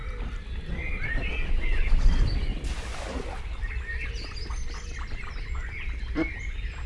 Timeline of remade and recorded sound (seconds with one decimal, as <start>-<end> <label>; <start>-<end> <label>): 0.0-6.9 recorded